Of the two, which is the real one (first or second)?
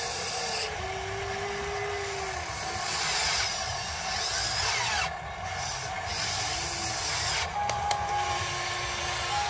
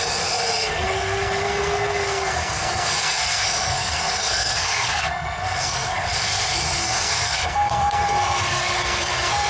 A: first